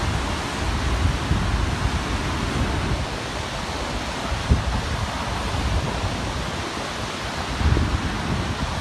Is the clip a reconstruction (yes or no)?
no